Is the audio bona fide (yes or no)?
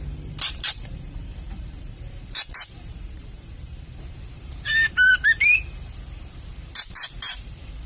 no